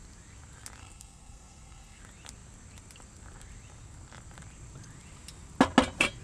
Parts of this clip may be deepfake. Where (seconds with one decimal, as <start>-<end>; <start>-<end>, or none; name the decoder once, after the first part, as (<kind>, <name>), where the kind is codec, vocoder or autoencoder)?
0.8-2.0 (codec, SNAC)